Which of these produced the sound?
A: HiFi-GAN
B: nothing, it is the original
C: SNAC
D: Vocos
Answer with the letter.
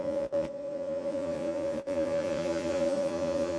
D